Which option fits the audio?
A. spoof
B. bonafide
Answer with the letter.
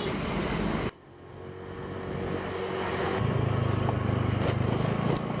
B